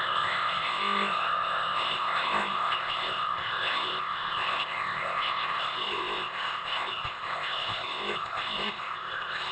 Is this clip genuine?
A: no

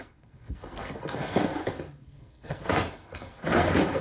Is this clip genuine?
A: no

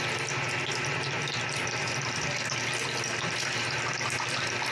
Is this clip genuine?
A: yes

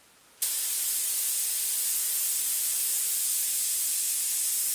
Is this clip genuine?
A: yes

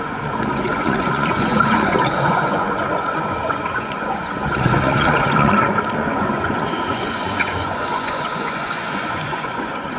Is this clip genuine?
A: no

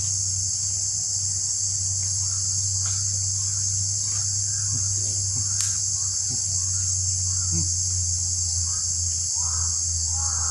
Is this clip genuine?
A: yes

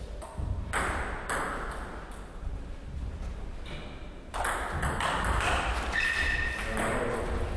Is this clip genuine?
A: yes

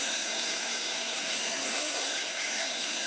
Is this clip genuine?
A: no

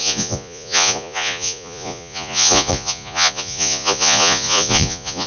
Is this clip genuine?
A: no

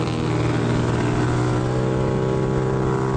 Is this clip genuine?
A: yes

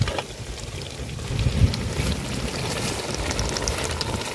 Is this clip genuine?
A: yes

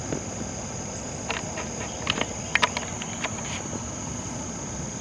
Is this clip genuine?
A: no